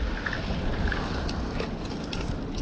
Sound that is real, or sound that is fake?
real